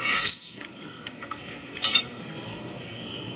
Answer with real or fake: fake